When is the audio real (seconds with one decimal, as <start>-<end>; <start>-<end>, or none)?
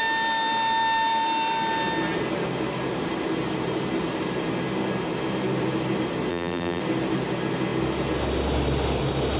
0.0-6.3; 6.8-9.4